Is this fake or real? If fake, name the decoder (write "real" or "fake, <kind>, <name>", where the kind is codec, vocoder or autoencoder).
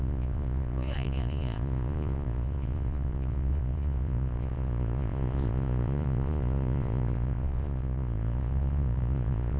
fake, vocoder, Vocos